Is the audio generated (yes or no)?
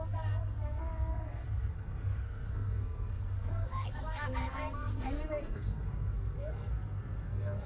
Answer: yes